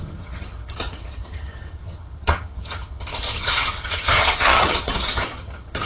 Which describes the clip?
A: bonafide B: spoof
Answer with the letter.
B